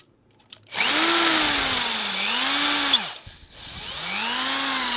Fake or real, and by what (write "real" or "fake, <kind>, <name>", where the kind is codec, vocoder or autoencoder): real